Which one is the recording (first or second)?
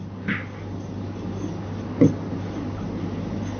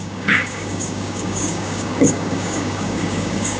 first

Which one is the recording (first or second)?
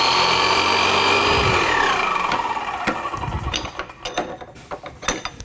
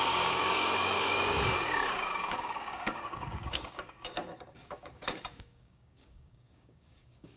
first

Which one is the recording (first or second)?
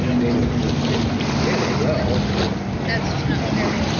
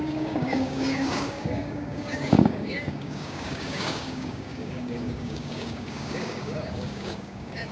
first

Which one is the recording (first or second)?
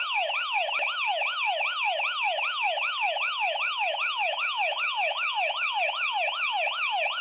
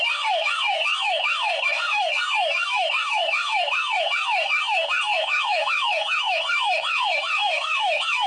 first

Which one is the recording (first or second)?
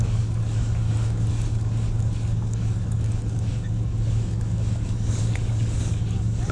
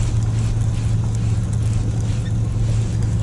second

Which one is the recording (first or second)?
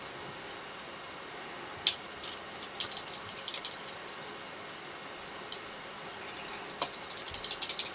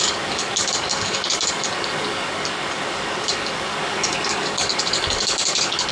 first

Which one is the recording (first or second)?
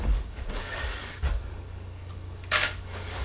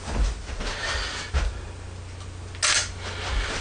second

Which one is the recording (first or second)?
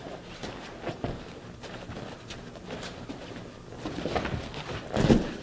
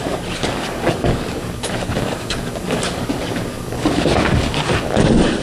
first